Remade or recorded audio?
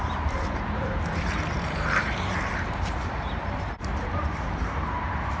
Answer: remade